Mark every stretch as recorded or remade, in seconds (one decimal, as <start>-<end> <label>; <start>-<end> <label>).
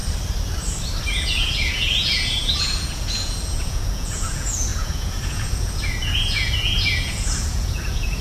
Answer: 0.0-1.0 recorded; 1.0-8.2 remade